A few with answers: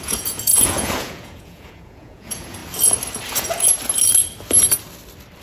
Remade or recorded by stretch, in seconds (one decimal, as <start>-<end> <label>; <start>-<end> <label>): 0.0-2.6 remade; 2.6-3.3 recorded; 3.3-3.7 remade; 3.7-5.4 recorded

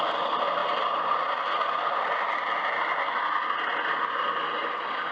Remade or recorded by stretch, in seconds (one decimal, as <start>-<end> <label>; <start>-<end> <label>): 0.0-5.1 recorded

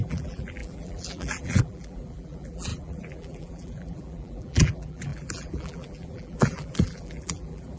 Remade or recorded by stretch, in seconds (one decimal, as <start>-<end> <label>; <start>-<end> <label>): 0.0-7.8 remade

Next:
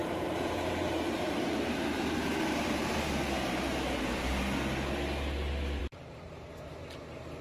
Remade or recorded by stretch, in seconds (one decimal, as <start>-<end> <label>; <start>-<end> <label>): 0.0-4.4 remade; 4.4-5.8 recorded; 5.8-6.5 remade; 6.5-7.4 recorded

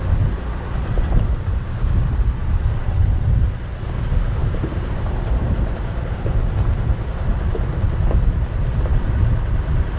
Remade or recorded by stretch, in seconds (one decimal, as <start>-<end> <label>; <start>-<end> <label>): 0.0-10.0 remade

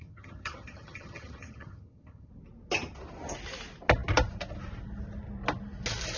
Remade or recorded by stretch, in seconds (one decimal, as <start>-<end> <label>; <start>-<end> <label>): 0.0-2.3 remade; 2.3-6.2 recorded

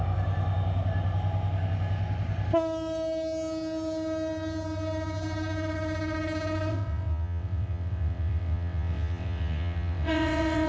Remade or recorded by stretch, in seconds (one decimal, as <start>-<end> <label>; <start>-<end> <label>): 0.0-6.7 recorded; 6.7-10.7 remade

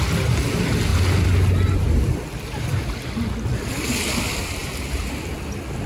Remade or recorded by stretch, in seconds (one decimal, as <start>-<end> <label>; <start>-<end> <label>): 0.0-5.9 recorded